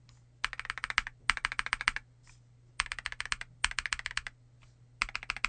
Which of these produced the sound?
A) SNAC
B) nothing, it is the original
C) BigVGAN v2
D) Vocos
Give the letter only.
B